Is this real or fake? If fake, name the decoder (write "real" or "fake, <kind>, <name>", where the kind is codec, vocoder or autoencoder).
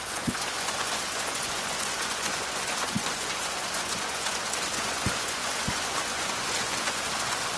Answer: fake, vocoder, Vocos